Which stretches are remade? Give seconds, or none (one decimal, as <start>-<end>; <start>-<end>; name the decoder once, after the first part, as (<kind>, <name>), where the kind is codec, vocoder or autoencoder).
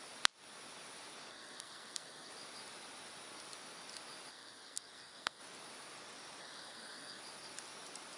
1.3-2.3 (codec, SNAC); 4.3-5.4; 6.4-7.2